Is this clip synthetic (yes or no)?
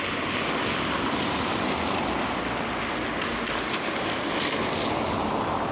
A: no